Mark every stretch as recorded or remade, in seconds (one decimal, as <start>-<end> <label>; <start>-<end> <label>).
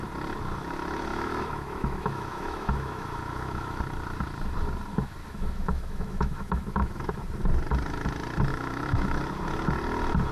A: 0.0-1.1 recorded; 1.1-3.8 remade; 3.8-5.2 recorded; 5.2-7.1 remade; 7.1-8.5 recorded; 8.5-9.2 remade; 9.2-10.3 recorded